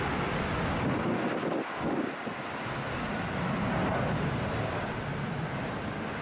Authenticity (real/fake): real